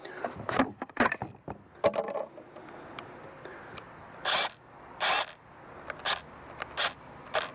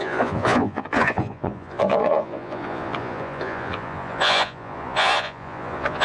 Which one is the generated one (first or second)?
second